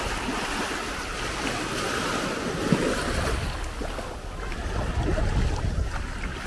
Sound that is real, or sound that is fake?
real